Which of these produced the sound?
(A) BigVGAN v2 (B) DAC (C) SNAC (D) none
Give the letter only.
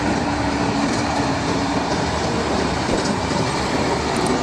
A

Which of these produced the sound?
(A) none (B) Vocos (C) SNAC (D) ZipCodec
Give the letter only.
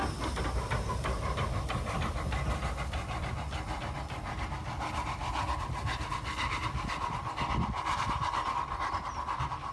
A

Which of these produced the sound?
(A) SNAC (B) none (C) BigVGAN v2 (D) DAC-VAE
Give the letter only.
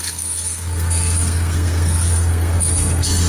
A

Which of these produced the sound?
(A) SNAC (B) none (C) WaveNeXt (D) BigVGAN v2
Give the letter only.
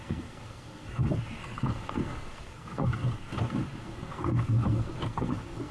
A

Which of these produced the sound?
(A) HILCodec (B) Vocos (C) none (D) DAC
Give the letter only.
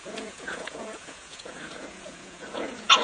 B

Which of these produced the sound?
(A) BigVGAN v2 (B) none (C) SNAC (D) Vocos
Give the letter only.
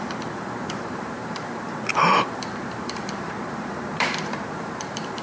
A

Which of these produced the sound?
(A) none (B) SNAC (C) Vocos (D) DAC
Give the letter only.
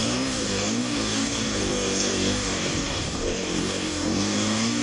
D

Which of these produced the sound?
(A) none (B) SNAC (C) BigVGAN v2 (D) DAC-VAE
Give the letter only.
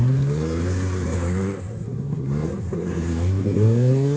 B